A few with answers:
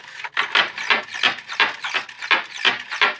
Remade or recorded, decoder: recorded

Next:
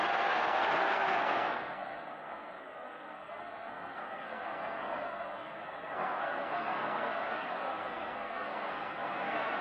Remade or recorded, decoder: remade, codec, SNAC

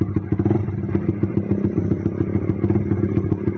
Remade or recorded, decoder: recorded